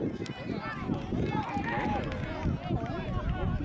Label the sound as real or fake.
real